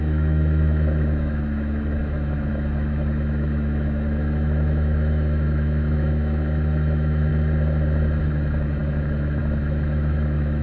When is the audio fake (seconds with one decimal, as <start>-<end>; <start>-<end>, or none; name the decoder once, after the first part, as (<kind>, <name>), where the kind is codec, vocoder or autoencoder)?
0.0-7.3 (autoencoder, DAC-VAE); 8.2-10.6